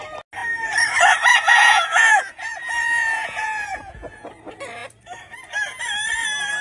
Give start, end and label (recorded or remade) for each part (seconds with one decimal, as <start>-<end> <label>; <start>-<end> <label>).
0.0-1.3 recorded; 1.3-4.3 remade; 4.3-6.6 recorded